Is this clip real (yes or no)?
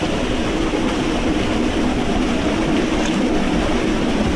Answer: yes